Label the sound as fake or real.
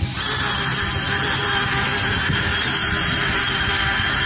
real